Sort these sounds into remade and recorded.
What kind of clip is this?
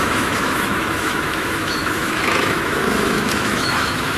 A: remade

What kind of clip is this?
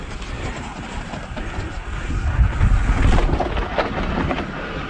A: recorded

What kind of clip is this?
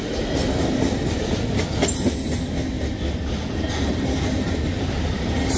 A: recorded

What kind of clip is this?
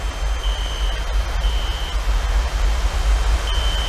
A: recorded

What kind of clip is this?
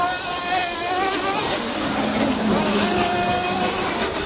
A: remade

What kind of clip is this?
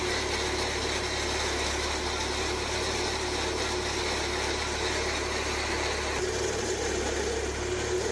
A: recorded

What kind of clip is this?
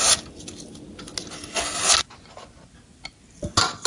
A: recorded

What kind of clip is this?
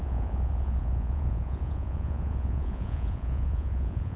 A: remade